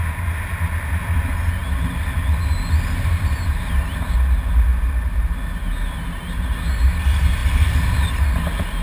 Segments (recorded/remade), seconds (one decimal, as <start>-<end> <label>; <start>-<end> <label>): 0.0-8.8 recorded